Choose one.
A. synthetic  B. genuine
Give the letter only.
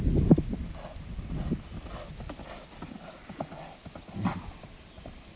B